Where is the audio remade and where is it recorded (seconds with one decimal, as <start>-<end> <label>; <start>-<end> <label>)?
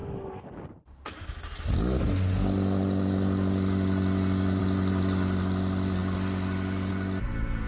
0.0-7.7 recorded